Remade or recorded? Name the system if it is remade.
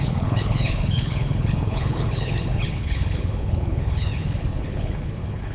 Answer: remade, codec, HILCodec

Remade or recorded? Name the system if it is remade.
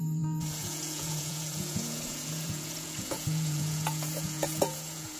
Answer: remade, vocoder, Vocos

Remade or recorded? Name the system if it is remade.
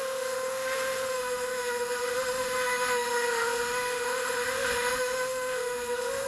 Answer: remade, autoencoder, DAC-VAE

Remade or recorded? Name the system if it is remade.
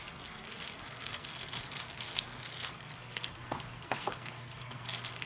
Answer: remade, codec, SNAC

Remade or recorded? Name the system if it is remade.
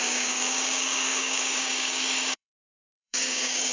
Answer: remade, codec, DAC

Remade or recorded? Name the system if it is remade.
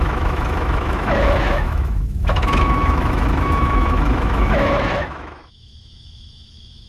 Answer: remade, autoencoder, DAC-VAE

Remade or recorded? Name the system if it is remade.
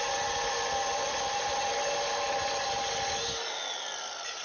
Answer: recorded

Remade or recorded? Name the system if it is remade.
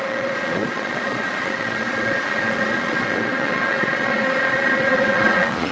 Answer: remade, vocoder, Vocos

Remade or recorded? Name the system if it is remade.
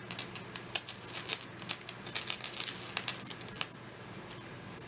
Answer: recorded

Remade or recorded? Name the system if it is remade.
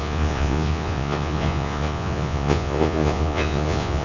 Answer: remade, vocoder, Vocos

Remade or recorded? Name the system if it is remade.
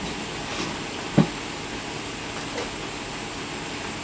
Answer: recorded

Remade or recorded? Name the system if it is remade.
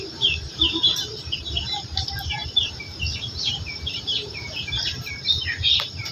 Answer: remade, vocoder, BigVGAN v2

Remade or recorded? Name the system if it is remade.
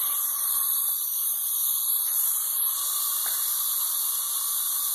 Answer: remade, vocoder, BigVGAN v2